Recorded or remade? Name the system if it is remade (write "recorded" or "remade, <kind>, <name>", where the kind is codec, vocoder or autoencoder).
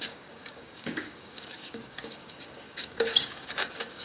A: remade, codec, DAC